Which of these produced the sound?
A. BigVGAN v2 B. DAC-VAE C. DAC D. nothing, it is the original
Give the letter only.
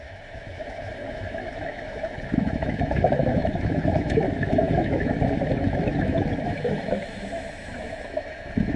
B